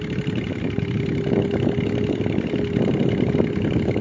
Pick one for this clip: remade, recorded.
recorded